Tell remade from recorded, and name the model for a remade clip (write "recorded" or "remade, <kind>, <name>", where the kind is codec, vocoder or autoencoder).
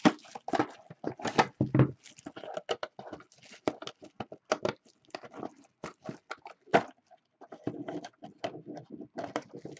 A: recorded